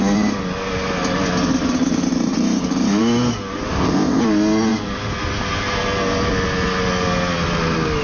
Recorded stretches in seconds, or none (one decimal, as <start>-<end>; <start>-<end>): 0.0-3.7; 4.2-8.0

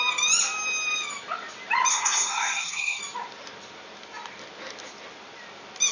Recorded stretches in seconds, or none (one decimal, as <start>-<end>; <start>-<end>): 0.0-1.9; 3.0-5.9

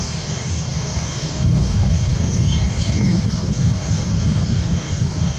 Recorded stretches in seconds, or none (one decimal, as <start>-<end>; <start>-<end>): none

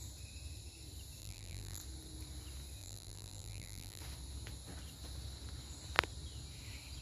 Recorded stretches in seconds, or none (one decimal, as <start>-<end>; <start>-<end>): 0.0-1.2; 1.8-2.8; 4.0-7.0

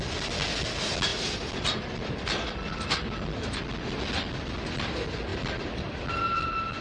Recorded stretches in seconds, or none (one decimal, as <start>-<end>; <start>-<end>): 0.0-1.1; 3.6-5.3

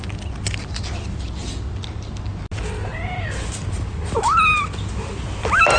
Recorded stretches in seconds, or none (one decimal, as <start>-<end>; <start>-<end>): 0.0-5.8

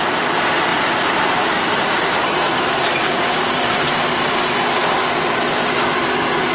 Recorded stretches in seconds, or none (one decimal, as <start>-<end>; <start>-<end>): 0.0-0.7; 4.4-6.5